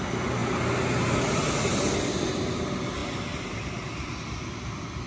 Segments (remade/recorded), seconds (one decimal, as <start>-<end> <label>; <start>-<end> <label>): 0.0-5.1 recorded